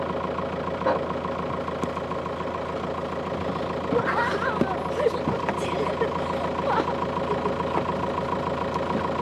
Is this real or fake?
real